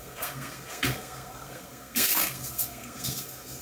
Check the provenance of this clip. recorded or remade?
remade